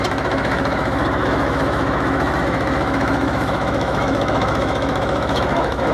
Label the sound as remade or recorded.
remade